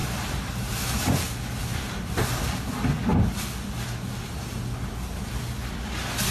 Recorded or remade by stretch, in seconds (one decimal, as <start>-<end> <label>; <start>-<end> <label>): 0.0-1.0 remade; 1.0-1.7 recorded; 1.7-2.2 remade; 2.2-6.3 recorded